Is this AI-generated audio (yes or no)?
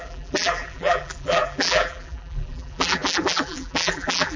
yes